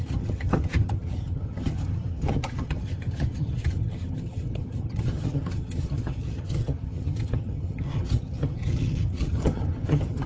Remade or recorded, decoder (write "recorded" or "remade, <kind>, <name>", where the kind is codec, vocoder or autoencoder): remade, vocoder, HiFi-GAN